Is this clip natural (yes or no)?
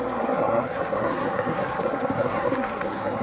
no